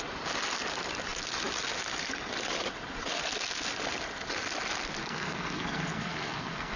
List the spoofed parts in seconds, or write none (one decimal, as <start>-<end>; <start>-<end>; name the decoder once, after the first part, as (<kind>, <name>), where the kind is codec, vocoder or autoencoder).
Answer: 5.0-6.8 (codec, SNAC)